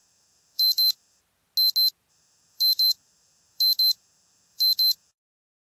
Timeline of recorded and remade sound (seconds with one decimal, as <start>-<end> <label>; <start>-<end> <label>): 0.0-1.2 remade; 1.2-2.1 recorded; 2.1-5.7 remade